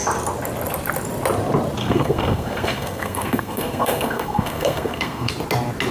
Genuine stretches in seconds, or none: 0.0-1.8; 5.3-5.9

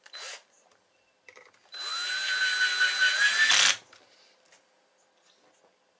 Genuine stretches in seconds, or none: 1.9-5.5

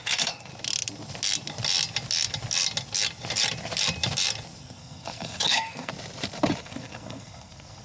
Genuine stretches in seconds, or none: 0.5-4.6; 5.9-6.6

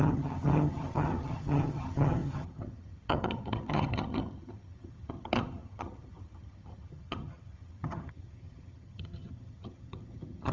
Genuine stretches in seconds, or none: none

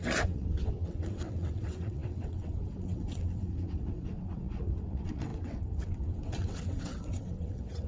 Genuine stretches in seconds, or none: none